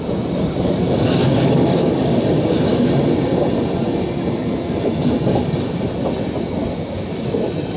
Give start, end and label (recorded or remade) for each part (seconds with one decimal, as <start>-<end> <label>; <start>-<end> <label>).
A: 0.0-1.2 recorded; 1.2-2.9 remade; 2.9-7.8 recorded